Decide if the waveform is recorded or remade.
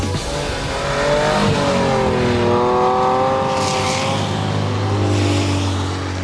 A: recorded